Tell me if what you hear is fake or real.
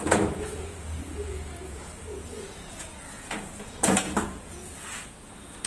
fake